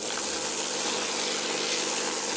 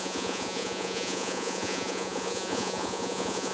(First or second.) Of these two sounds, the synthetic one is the second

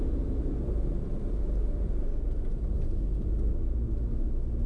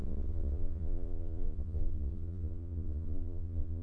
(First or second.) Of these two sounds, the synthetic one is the second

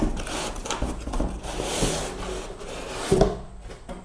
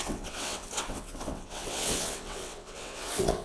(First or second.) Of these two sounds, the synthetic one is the second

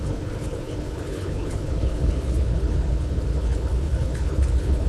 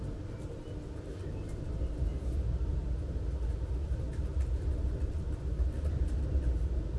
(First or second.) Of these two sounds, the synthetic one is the first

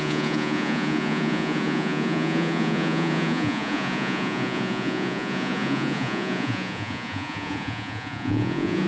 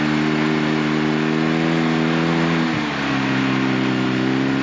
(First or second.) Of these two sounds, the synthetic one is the first